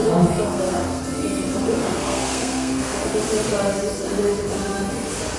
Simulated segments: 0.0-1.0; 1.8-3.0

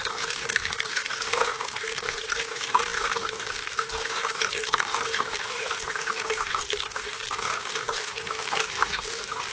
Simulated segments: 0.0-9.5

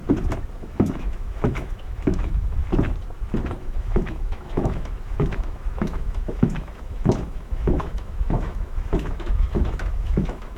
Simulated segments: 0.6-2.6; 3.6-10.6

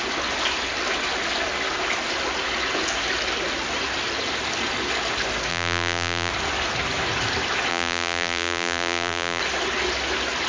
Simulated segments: 5.5-6.3; 7.7-9.4

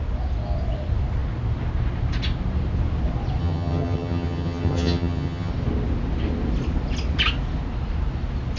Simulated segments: 3.4-5.5

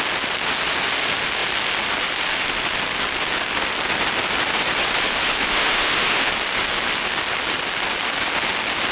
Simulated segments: 5.5-6.3

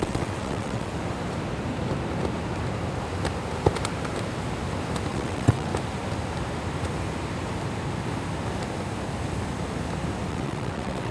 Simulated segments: 0.0-0.9; 5.1-5.7; 10.3-11.1